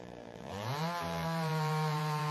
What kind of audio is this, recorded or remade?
remade